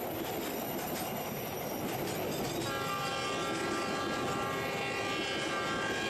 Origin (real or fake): real